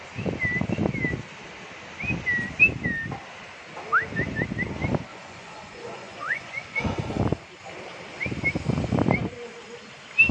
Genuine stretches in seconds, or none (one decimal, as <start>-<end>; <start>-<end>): 0.0-5.1; 7.2-10.3